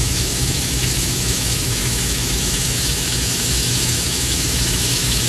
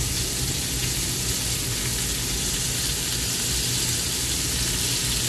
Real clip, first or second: second